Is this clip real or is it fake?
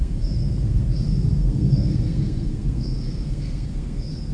fake